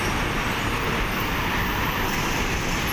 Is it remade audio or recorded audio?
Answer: recorded